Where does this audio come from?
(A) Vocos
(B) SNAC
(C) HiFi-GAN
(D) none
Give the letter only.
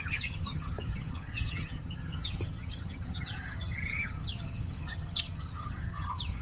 C